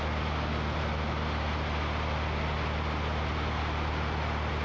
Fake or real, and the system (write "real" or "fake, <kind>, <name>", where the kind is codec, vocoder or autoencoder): real